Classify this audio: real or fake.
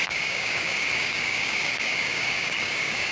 fake